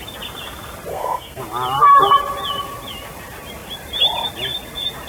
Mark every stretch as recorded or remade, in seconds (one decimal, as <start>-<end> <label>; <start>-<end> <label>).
0.0-0.9 recorded; 0.9-1.4 remade; 1.4-5.1 recorded